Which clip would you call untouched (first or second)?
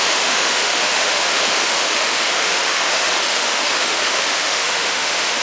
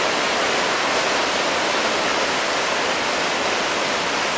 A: second